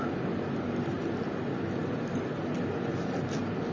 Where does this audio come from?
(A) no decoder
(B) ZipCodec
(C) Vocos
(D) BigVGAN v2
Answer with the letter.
A